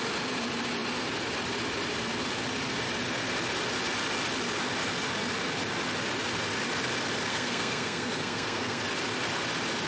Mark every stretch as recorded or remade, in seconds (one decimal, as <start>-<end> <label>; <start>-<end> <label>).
0.0-7.3 recorded; 7.3-8.8 remade; 8.8-9.9 recorded